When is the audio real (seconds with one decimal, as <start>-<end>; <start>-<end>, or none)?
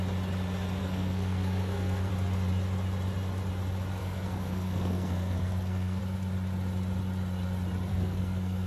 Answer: 0.0-0.8; 2.1-4.0; 6.0-7.9